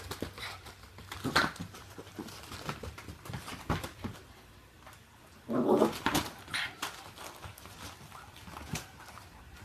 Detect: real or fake real